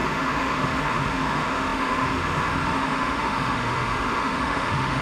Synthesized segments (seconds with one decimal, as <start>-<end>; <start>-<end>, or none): 0.0-5.0